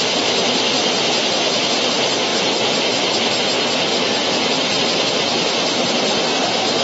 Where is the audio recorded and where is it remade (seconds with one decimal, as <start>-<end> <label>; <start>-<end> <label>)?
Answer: 0.0-2.3 remade; 2.3-3.4 recorded; 3.4-3.9 remade; 3.9-4.8 recorded; 4.8-6.8 remade